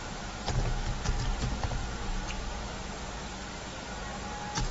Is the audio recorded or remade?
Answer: recorded